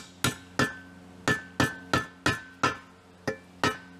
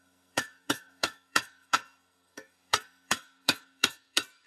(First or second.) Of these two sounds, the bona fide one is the first